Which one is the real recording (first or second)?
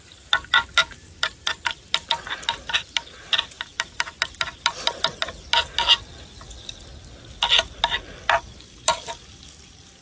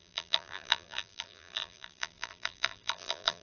first